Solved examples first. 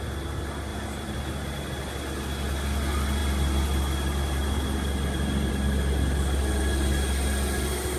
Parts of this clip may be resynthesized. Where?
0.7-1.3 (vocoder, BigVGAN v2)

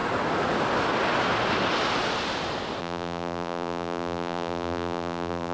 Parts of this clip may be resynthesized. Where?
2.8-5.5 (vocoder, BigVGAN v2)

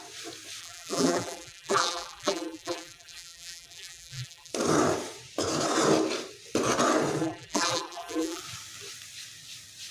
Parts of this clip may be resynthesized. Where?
0.6-4.5 (vocoder, BigVGAN v2); 7.2-8.4

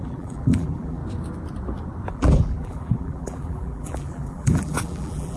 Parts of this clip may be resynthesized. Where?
0.0-1.0 (vocoder, BigVGAN v2); 2.1-5.4

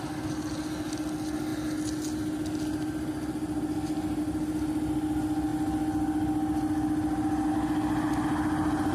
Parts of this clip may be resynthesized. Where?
none

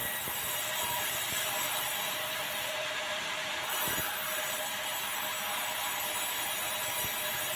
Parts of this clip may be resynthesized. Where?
0.0-3.6 (vocoder, BigVGAN v2)

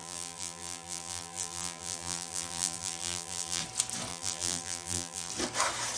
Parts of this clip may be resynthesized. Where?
0.0-3.6 (vocoder, BigVGAN v2); 4.1-5.3